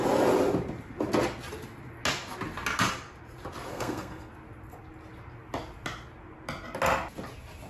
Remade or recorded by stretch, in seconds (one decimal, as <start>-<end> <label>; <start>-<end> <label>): 0.0-3.7 recorded; 3.7-4.3 remade; 4.3-7.7 recorded